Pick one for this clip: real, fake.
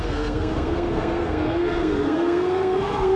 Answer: fake